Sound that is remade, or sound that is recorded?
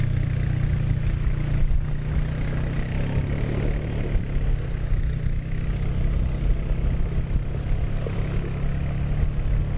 recorded